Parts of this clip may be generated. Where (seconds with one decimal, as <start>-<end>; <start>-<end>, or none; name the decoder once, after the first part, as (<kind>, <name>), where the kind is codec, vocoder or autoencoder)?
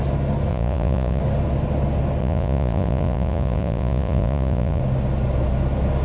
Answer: 0.5-1.2 (vocoder, Vocos); 2.2-4.8